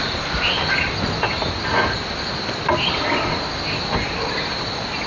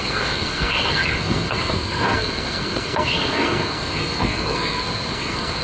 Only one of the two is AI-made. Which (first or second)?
second